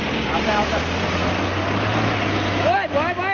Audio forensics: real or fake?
real